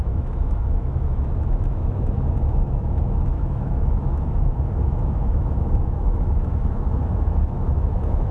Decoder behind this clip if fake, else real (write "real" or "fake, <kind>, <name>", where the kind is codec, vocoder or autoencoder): fake, autoencoder, DAC-VAE